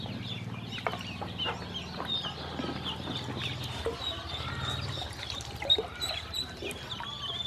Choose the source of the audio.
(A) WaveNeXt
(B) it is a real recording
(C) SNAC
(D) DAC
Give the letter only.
B